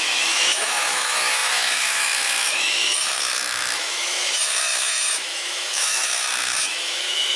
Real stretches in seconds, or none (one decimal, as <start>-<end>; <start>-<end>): none

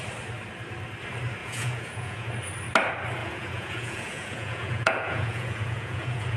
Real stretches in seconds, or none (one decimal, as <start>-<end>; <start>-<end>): 0.0-1.4; 2.3-3.2

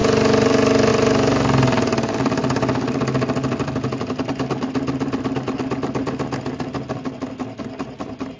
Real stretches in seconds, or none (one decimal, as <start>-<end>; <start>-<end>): 0.0-8.4

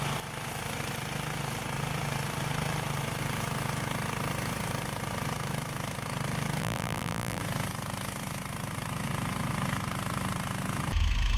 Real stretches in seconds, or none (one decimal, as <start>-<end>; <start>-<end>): 0.0-6.6; 7.4-11.4

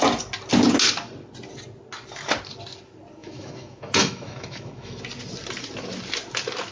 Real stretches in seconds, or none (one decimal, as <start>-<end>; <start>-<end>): 0.0-3.2; 5.0-6.7

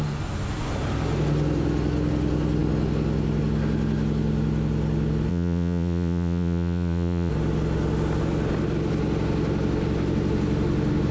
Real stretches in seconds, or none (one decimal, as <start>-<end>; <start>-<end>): 0.0-5.3; 7.3-11.1

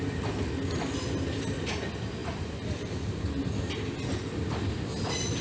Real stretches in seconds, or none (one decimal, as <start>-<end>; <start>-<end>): 0.0-5.4